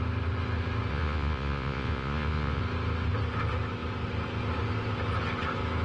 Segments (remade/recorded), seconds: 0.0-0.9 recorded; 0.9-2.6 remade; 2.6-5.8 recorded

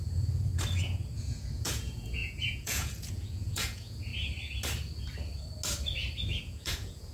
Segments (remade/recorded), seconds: 0.0-0.5 remade; 0.5-1.2 recorded; 1.2-4.1 remade; 4.1-6.4 recorded; 6.4-7.1 remade

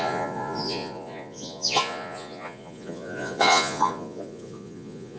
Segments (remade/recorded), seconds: 0.0-5.2 remade